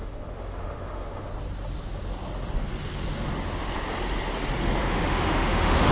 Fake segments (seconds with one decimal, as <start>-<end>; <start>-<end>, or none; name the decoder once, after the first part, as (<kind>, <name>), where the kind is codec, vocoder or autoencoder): 0.0-1.3 (autoencoder, DAC-VAE); 4.8-5.9